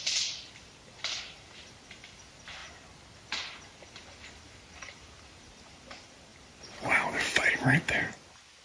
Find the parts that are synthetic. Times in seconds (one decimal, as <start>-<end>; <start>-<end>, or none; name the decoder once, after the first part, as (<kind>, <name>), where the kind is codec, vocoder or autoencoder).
none